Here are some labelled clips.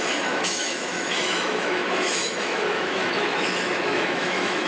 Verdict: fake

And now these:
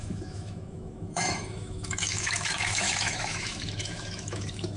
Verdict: fake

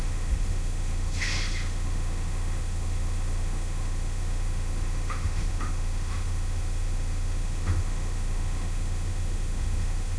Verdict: fake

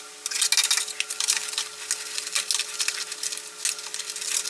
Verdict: real